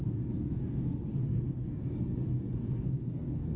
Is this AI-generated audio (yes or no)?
yes